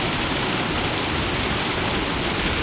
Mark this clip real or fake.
real